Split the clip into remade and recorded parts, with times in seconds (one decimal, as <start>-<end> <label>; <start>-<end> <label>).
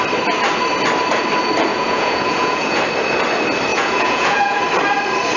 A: 0.0-1.7 recorded; 1.7-2.8 remade; 2.8-3.7 recorded; 3.7-4.6 remade; 4.6-5.4 recorded